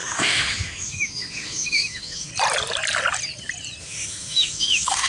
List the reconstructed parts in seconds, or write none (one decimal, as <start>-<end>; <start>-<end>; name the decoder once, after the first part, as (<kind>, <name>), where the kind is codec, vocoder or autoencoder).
0.0-2.3 (autoencoder, DAC-VAE); 3.8-5.1